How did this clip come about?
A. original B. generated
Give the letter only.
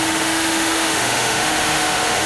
B